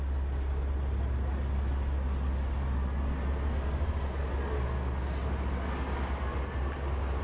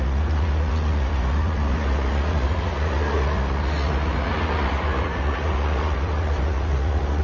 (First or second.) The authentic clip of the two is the first